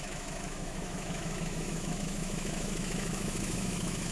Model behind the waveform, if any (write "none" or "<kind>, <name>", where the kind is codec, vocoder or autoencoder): autoencoder, DAC-VAE